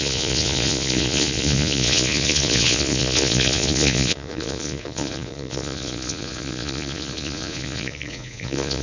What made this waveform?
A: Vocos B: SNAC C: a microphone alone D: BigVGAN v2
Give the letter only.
A